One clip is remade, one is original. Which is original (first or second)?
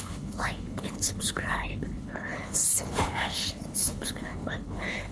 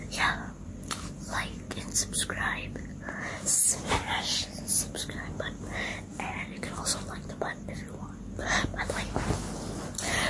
second